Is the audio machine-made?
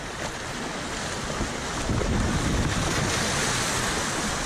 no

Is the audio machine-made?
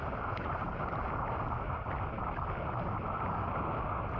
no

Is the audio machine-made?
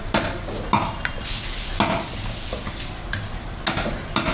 no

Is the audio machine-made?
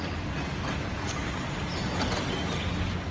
no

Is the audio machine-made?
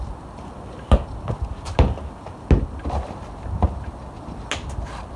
no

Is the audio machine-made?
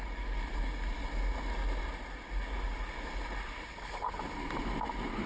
no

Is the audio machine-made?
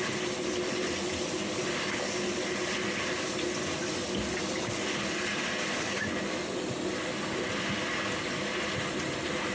no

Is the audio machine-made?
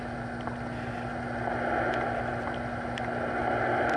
no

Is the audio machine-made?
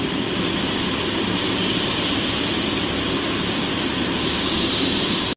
no